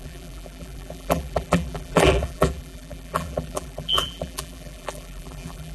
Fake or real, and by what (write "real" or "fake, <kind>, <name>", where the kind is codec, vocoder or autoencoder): fake, vocoder, BigVGAN v2